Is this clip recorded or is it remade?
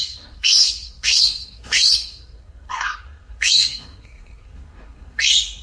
remade